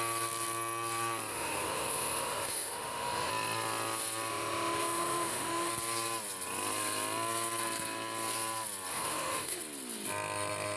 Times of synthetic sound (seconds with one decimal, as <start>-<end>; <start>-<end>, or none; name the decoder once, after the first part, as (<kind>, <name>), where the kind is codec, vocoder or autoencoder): 1.3-3.3 (autoencoder, DAC-VAE); 4.3-5.7; 8.9-9.6